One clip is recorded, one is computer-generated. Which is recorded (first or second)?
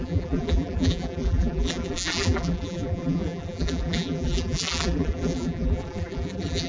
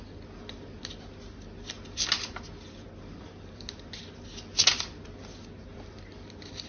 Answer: second